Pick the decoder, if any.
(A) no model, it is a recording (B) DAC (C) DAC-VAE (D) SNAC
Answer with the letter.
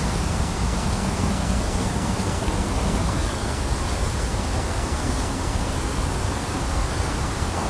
D